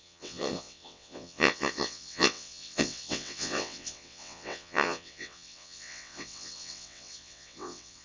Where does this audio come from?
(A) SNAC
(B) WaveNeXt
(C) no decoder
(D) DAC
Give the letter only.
B